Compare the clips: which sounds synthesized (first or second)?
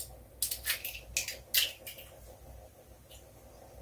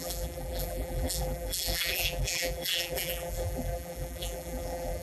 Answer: second